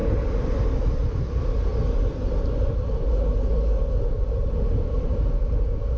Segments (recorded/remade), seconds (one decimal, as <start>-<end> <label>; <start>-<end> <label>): 0.0-6.0 recorded